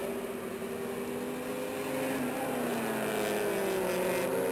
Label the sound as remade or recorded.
recorded